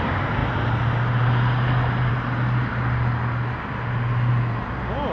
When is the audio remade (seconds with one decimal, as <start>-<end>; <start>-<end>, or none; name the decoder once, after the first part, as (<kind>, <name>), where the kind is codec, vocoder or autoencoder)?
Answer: none